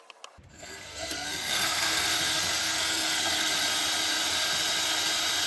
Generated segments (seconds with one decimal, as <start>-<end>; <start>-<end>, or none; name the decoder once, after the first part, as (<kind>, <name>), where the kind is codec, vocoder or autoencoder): 0.5-3.5 (codec, SNAC)